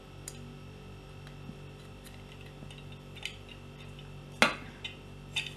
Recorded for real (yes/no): yes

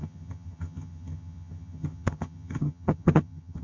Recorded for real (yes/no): no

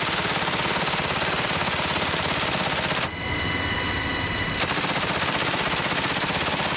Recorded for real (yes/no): yes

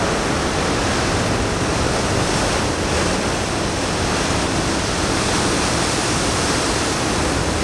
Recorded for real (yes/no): yes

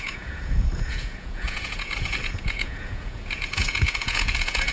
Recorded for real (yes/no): no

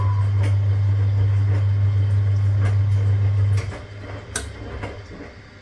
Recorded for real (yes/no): yes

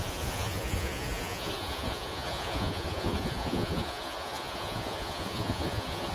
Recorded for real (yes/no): no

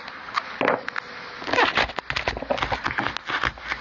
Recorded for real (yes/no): yes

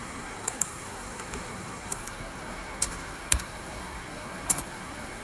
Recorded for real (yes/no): no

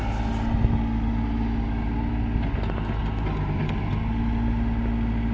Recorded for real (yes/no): yes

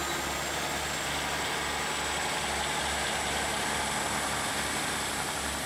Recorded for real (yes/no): yes